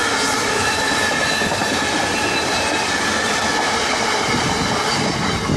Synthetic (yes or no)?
yes